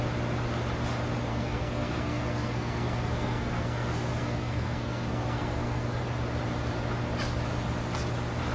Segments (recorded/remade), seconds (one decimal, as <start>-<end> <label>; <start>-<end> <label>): 0.0-1.3 recorded; 1.3-6.0 remade; 6.0-8.5 recorded